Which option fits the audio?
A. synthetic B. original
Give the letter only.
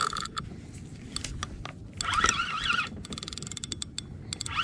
B